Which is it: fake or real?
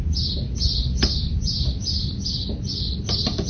real